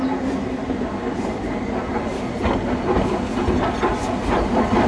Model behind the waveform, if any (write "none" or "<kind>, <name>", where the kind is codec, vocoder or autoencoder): none